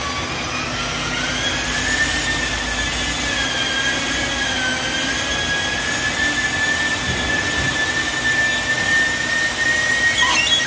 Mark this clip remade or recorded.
recorded